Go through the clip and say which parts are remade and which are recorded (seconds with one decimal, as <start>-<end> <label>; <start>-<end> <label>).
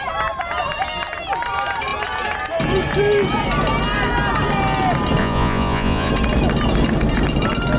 0.0-5.2 recorded; 5.2-6.1 remade; 6.1-7.8 recorded